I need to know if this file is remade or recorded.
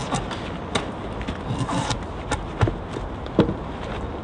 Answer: recorded